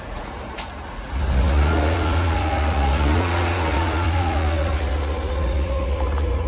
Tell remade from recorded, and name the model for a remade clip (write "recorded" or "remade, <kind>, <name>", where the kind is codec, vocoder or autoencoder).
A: remade, vocoder, Vocos